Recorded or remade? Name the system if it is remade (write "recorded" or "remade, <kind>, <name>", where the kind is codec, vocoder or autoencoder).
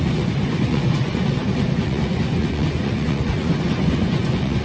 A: remade, vocoder, Vocos